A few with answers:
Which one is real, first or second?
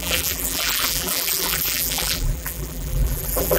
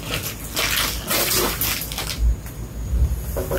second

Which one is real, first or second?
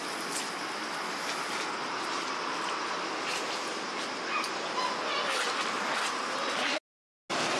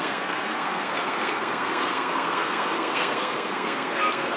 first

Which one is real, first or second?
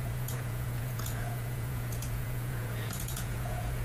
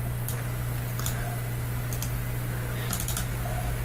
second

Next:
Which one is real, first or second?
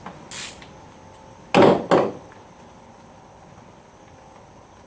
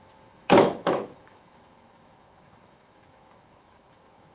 first